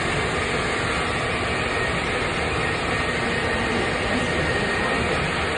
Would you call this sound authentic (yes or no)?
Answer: yes